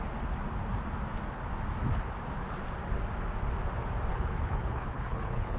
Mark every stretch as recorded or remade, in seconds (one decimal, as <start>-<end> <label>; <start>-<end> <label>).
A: 0.0-4.1 recorded; 4.1-5.6 remade